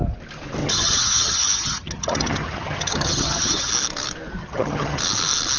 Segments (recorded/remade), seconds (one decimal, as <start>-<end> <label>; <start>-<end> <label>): 0.0-0.6 recorded; 0.6-3.7 remade; 3.7-4.4 recorded; 4.4-5.0 remade; 5.0-5.6 recorded